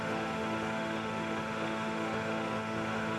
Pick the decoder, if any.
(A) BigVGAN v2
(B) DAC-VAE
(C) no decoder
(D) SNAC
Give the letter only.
B